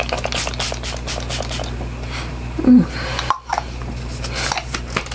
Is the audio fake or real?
real